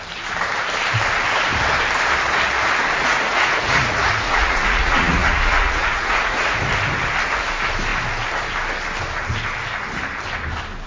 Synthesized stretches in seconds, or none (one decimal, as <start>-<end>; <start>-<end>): 3.0-6.7